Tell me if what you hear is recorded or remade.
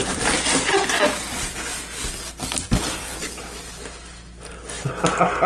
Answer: recorded